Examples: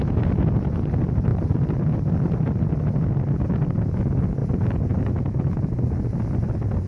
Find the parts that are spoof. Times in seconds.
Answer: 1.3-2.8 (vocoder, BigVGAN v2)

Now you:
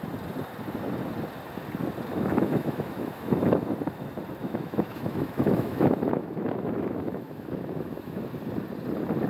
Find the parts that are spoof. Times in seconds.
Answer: 2.1-3.6 (autoencoder, DAC-VAE); 4.4-8.2

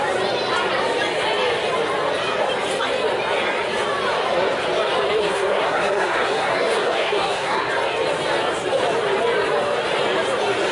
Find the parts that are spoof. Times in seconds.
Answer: 5.2-7.7 (codec, SNAC)

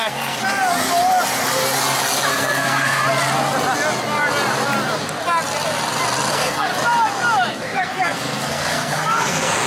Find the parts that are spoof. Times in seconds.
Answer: 0.0-0.4 (codec, SNAC); 2.3-3.0; 6.3-6.7; 7.5-9.7